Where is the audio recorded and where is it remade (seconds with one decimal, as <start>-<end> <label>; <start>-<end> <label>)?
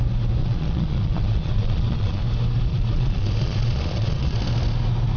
0.0-0.4 recorded; 0.4-2.2 remade; 2.2-2.7 recorded; 2.7-4.4 remade; 4.4-5.2 recorded